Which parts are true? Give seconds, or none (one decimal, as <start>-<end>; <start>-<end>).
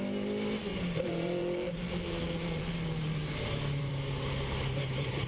0.0-0.7; 3.9-5.3